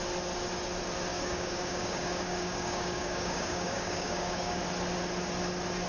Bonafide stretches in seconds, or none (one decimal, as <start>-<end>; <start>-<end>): 0.0-1.1; 4.6-5.9